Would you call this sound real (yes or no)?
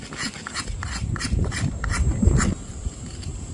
yes